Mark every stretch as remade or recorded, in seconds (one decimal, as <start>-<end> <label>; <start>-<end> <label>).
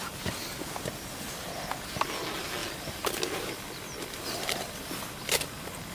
0.0-5.9 recorded